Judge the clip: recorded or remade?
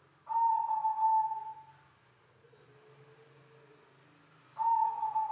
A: recorded